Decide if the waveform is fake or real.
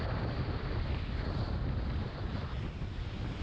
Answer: real